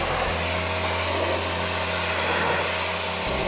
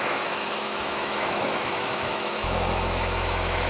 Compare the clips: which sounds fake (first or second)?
second